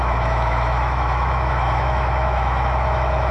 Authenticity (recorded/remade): remade